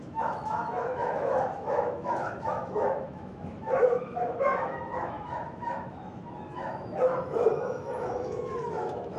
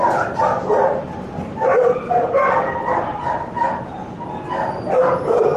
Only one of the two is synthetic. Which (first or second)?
first